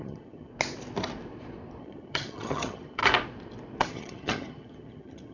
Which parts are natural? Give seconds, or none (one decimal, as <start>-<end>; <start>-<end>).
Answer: 0.5-1.8; 3.0-3.8